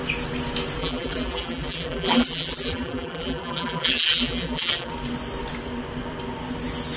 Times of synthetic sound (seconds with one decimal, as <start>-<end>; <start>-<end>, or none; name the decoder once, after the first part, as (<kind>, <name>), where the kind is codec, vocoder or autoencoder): 0.8-4.9 (vocoder, BigVGAN v2)